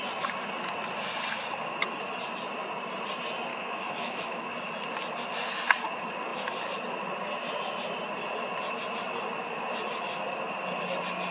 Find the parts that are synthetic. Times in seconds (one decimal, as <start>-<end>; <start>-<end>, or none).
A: 3.5-4.5

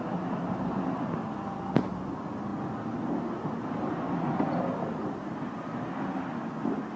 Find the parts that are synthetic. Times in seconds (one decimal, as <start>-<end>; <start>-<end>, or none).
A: none

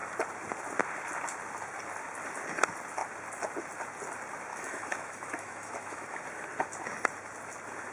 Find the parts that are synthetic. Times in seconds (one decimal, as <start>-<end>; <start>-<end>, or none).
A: 4.5-6.2

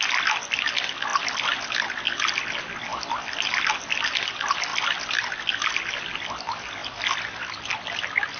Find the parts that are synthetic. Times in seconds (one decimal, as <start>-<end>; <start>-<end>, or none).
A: 2.9-3.7; 4.7-5.7